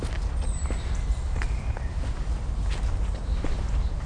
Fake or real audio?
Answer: real